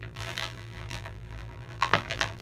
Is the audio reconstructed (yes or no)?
yes